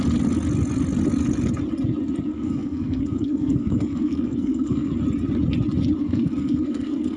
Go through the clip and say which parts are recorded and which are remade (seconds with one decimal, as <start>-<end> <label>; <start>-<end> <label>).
0.0-2.3 recorded; 2.3-4.9 remade; 4.9-6.0 recorded; 6.0-7.2 remade